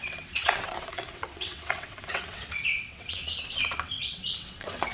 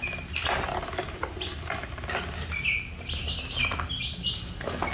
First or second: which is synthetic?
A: first